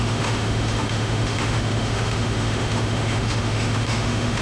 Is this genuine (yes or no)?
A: no